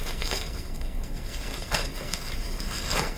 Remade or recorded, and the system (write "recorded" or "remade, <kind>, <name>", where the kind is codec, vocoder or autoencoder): remade, codec, SNAC